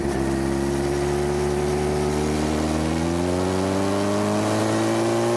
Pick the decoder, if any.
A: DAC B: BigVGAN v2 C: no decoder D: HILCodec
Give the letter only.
C